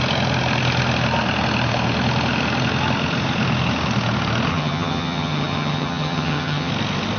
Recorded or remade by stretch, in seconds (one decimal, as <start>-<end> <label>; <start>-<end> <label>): 0.0-4.5 recorded; 4.5-6.7 remade; 6.7-7.2 recorded